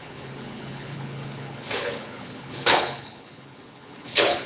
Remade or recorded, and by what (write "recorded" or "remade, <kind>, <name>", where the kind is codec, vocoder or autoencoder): remade, codec, HILCodec